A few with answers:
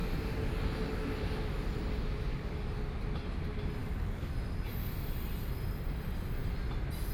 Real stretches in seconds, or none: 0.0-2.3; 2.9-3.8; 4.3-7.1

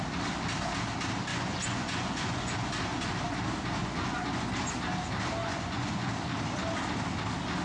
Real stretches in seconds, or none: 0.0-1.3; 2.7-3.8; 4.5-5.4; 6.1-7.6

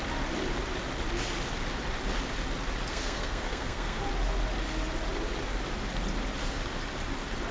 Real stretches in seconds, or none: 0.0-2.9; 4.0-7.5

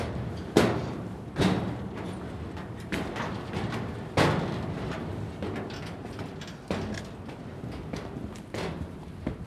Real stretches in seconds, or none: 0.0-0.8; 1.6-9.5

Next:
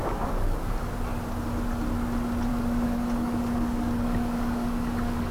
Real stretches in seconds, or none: 0.7-2.5